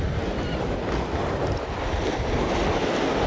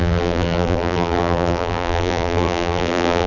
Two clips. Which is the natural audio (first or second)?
first